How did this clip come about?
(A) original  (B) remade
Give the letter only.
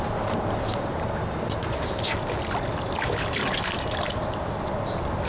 A